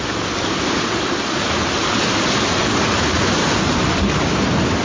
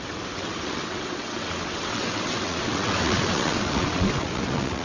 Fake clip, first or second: second